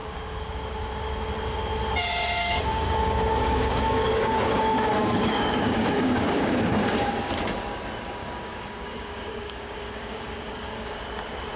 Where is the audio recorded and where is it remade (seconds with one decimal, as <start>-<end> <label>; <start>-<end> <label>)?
0.0-0.5 remade; 0.5-2.4 recorded; 2.4-7.3 remade; 7.3-8.2 recorded; 8.2-11.0 remade; 11.0-11.6 recorded